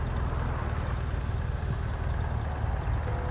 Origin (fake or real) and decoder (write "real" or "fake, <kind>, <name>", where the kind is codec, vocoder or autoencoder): real